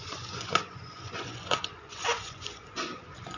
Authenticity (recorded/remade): remade